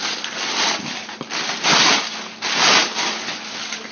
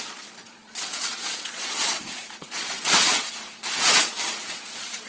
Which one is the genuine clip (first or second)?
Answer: first